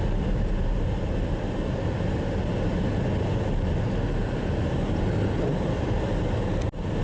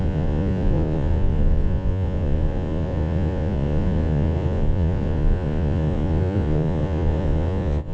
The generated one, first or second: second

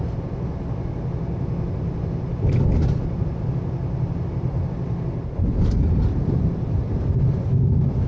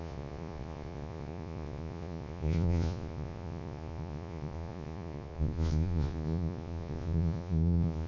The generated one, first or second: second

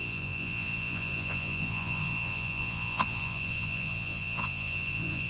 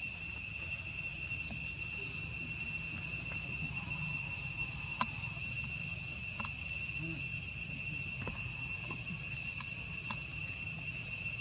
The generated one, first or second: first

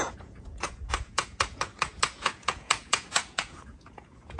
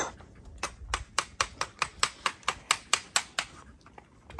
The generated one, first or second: first